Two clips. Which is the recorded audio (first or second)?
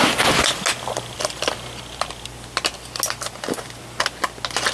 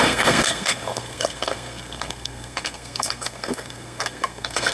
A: first